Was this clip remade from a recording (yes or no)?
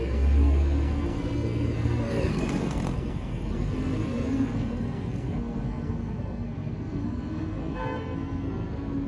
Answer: yes